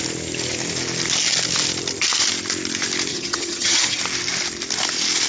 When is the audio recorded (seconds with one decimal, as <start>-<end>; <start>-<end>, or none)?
0.0-3.1; 4.0-5.3